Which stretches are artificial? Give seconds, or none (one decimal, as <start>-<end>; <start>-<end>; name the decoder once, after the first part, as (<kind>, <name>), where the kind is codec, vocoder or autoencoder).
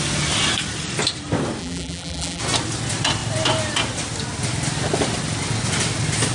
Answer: 1.6-2.4 (vocoder, BigVGAN v2)